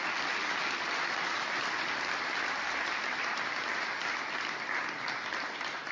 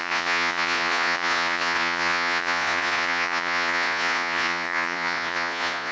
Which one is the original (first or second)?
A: first